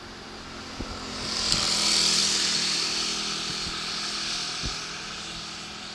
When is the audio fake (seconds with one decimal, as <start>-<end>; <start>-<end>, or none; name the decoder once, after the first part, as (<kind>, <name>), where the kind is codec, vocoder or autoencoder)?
none